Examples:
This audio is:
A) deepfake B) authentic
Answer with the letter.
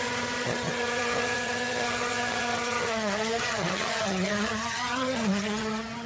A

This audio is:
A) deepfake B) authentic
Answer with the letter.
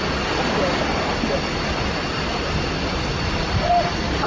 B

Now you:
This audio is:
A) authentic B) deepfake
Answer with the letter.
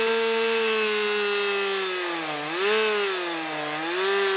A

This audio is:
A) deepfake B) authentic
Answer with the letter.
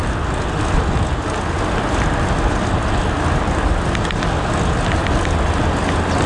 B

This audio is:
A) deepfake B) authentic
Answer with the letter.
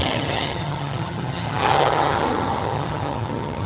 A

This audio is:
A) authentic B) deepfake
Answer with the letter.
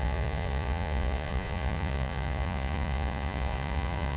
B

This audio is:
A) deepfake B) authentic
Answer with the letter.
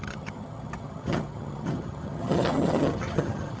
A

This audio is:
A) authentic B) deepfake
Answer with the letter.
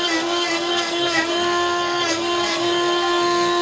B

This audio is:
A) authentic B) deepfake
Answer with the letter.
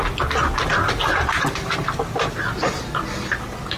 A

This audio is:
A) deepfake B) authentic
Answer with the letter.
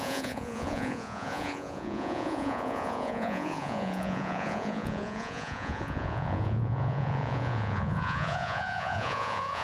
A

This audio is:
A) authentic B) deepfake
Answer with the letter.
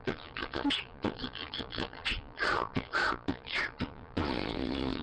B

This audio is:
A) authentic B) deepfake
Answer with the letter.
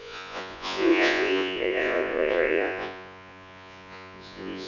B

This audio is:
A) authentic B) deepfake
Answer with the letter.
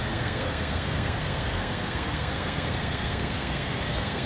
B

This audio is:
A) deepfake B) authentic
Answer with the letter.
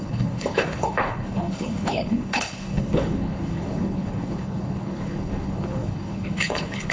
A